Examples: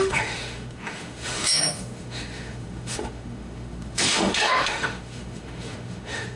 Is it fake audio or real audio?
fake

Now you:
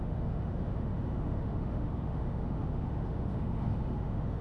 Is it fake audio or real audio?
fake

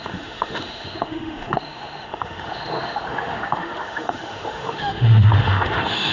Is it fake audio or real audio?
fake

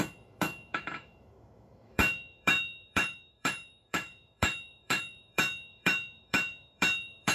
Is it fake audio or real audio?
fake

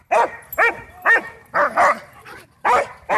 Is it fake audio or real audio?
real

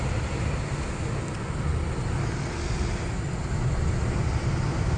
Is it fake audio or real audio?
real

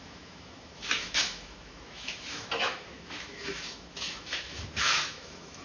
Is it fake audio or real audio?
fake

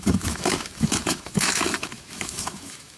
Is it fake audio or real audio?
fake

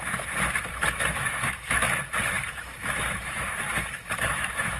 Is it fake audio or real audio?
fake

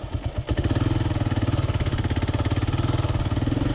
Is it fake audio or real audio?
real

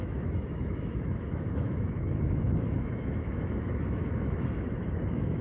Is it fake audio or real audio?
fake